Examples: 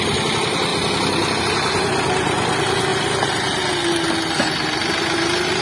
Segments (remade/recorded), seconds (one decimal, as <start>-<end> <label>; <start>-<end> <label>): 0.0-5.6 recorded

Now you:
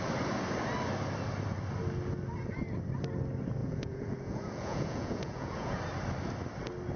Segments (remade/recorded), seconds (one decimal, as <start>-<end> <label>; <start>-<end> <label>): 0.0-3.6 recorded; 3.6-5.8 remade; 5.8-7.0 recorded

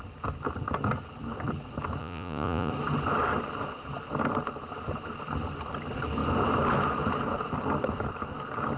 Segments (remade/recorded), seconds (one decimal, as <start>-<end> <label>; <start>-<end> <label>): 0.0-2.0 recorded; 2.0-2.7 remade; 2.7-8.8 recorded

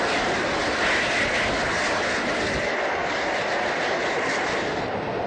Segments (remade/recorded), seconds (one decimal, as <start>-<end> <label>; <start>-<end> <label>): 0.0-5.3 recorded

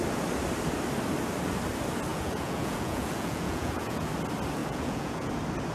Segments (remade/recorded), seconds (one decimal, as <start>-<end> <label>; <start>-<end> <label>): 0.0-2.1 recorded; 2.1-4.1 remade; 4.1-4.6 recorded; 4.6-5.3 remade; 5.3-5.7 recorded

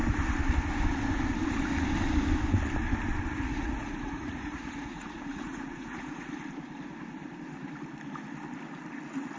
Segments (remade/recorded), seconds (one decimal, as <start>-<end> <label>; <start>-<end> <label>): 0.0-3.3 recorded; 3.3-6.3 remade; 6.3-9.4 recorded

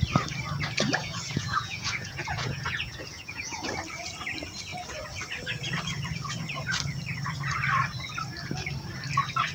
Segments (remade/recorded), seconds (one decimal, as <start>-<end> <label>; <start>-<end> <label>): 0.0-1.0 recorded; 1.0-3.7 remade; 3.7-9.5 recorded